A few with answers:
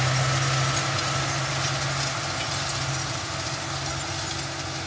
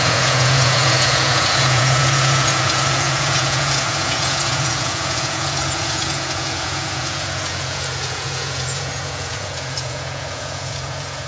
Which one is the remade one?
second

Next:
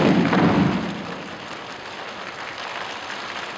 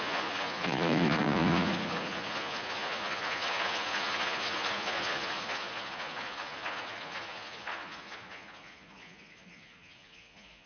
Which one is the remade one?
second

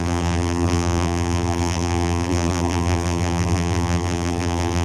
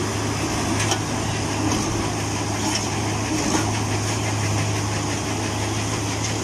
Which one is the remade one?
first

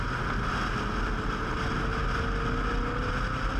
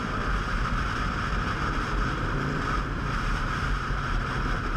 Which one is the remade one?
second